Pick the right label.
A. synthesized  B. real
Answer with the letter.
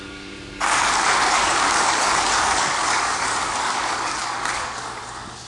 A